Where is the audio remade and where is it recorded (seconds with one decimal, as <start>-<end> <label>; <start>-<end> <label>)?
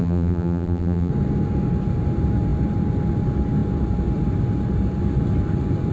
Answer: 0.0-1.1 remade; 1.1-5.9 recorded